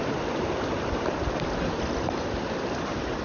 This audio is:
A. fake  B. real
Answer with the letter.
A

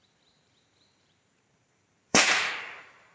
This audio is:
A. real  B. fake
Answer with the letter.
B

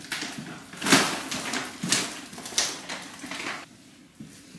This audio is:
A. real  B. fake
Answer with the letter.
A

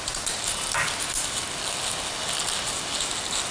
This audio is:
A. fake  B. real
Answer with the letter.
B